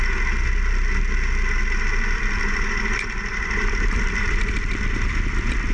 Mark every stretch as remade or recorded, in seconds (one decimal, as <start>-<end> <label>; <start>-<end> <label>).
0.0-2.1 recorded; 2.1-5.7 remade